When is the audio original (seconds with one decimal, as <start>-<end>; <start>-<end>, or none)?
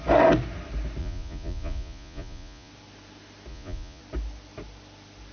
0.0-1.0; 2.7-3.5; 4.0-5.3